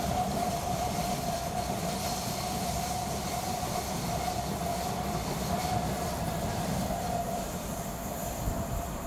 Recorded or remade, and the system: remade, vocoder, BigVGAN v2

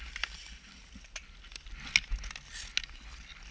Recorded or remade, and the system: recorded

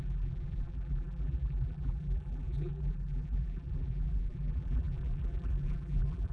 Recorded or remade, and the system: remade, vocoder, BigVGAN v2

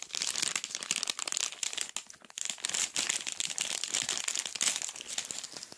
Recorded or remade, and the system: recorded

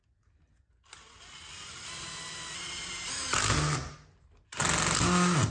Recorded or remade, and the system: recorded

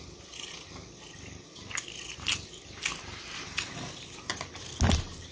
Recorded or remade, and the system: recorded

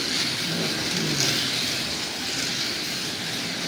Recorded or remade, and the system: recorded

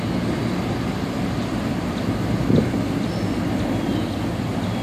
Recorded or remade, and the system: recorded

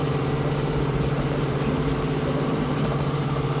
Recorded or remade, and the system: remade, vocoder, BigVGAN v2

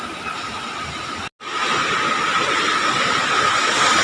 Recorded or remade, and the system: recorded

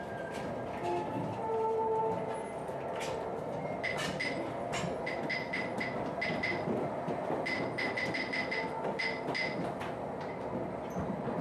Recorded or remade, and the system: recorded